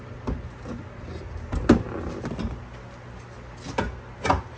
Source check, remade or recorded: recorded